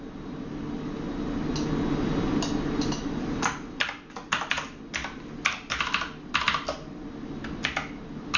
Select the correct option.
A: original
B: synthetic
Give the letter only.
A